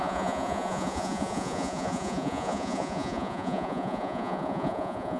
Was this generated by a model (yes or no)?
yes